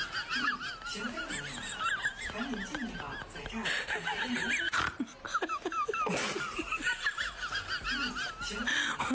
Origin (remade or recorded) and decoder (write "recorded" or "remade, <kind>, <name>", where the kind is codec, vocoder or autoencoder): recorded